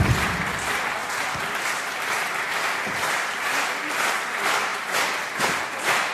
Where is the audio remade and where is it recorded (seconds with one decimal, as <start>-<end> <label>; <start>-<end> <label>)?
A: 0.0-1.0 remade; 1.0-2.0 recorded; 2.0-4.7 remade; 4.7-5.4 recorded; 5.4-6.1 remade